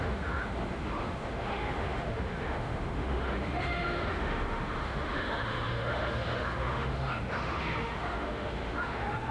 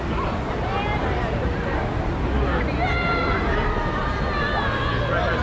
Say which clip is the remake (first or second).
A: first